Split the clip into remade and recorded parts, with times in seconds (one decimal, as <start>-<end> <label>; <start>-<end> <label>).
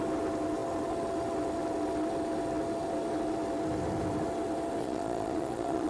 0.0-4.8 recorded; 4.8-5.9 remade